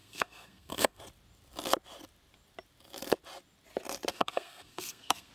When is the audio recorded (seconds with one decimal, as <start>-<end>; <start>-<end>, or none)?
1.0-4.1